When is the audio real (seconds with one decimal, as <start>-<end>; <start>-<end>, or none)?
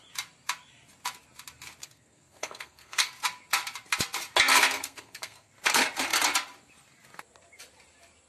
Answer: 0.0-1.8; 3.1-4.5; 5.5-8.3